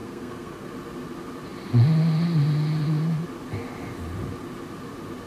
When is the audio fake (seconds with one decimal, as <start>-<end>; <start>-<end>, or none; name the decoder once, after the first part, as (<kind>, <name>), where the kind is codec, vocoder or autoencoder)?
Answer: 0.0-0.7 (codec, SNAC)